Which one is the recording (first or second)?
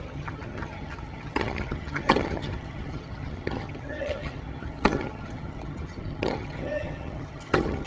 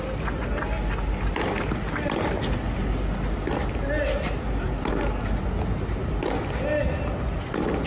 second